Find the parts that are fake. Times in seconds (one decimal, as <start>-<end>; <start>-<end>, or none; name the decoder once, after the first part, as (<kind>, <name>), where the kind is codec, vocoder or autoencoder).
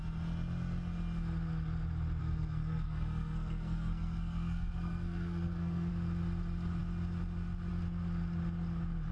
2.2-5.9 (codec, SNAC)